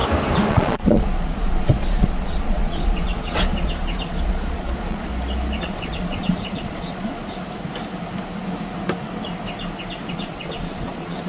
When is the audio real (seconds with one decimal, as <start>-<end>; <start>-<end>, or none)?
0.0-0.5; 5.1-5.6; 7.2-10.1